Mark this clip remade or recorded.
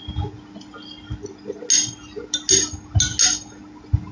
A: recorded